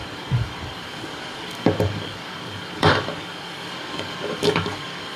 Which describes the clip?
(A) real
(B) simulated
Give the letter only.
B